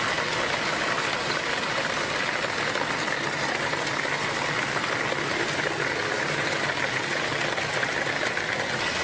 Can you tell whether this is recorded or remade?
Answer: recorded